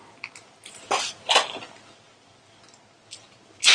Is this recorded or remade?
recorded